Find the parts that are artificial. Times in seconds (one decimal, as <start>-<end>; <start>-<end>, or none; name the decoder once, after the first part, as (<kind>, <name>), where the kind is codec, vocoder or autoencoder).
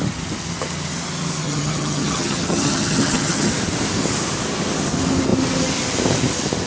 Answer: 1.4-3.5 (vocoder, HiFi-GAN)